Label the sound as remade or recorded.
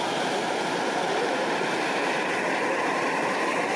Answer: recorded